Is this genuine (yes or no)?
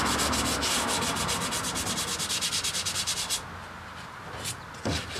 yes